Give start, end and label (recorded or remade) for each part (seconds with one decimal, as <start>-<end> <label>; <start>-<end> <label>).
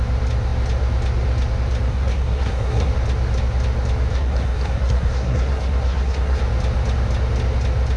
0.0-1.9 recorded; 1.9-2.9 remade; 2.9-4.1 recorded; 4.1-6.4 remade; 6.4-8.0 recorded